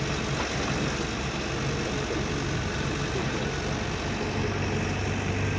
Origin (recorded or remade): recorded